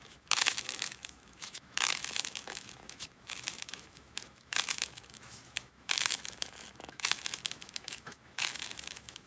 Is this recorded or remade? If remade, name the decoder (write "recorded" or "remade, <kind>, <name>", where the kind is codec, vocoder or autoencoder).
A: remade, autoencoder, DAC-VAE